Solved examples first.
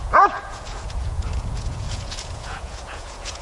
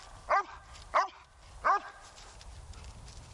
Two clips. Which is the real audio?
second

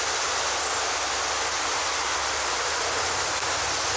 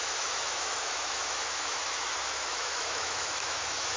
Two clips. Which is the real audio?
first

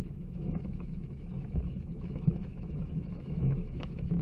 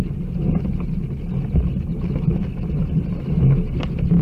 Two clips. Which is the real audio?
second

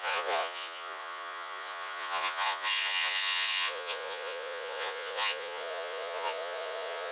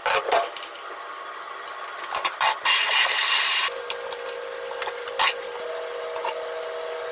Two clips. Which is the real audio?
second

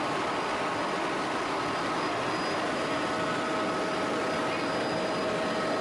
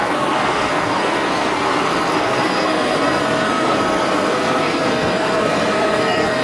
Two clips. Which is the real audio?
first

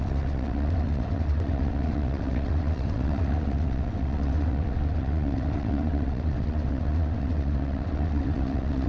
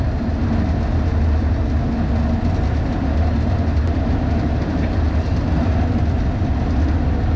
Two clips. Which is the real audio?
second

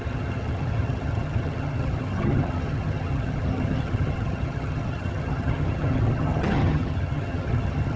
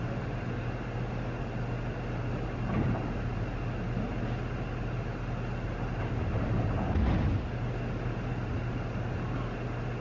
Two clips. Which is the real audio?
second